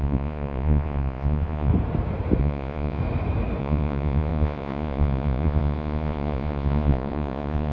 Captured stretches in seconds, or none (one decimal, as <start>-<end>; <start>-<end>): 1.7-2.4; 3.0-3.6